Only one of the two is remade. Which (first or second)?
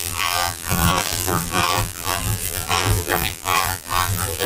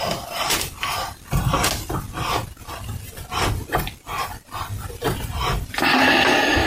first